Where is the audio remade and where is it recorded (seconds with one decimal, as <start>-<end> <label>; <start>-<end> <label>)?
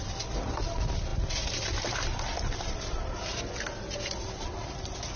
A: 0.0-5.2 recorded